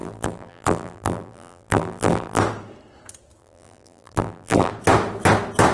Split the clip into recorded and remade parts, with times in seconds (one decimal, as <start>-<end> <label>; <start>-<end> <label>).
0.0-2.4 remade; 2.4-3.4 recorded; 3.4-4.7 remade; 4.7-5.7 recorded